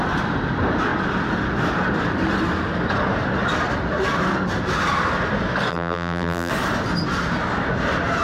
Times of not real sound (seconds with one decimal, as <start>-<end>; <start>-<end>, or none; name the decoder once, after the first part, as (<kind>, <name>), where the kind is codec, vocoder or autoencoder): 5.7-6.5 (vocoder, BigVGAN v2)

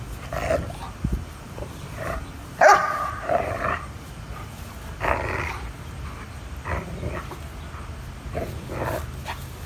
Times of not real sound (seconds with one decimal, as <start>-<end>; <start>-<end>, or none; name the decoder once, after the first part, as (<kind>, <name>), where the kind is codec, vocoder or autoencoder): 0.8-4.5 (vocoder, BigVGAN v2)